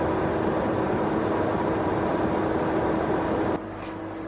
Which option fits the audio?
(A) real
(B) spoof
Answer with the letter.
A